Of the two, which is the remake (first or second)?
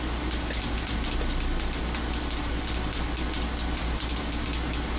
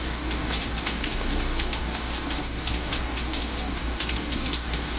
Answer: second